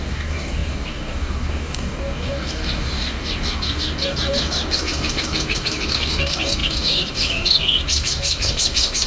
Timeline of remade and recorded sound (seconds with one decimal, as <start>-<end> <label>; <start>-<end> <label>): 0.0-9.1 remade